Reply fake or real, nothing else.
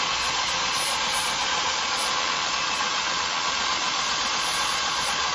fake